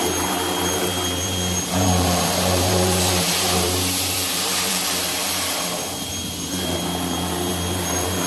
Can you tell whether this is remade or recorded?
remade